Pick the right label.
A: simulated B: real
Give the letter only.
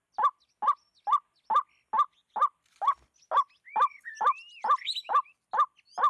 B